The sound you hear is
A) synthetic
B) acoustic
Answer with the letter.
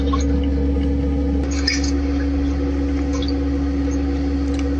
B